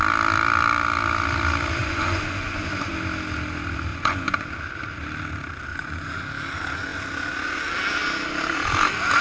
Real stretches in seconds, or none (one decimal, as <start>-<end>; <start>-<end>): 0.0-1.8; 2.9-3.9; 4.5-5.7; 6.3-9.2